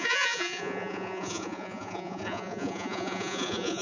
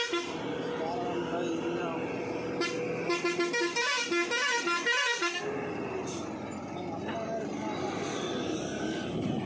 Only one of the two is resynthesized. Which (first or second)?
first